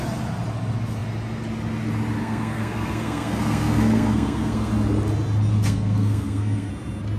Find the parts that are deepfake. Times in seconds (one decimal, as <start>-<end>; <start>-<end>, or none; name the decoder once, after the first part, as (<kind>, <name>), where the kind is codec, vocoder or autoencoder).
2.2-4.7 (codec, SNAC); 5.5-6.7